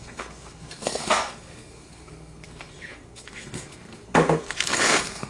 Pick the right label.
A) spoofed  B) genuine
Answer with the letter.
A